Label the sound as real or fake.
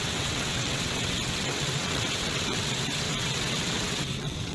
fake